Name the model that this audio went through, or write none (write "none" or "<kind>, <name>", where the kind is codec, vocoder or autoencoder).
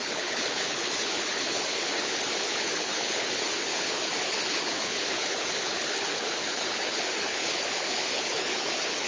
codec, HILCodec